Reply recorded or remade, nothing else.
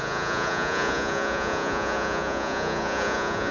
remade